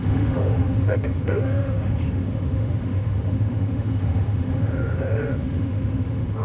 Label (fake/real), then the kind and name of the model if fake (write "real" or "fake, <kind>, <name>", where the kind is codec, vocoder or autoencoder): fake, autoencoder, DAC-VAE